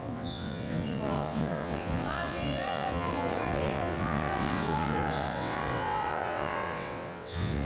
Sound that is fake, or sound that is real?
fake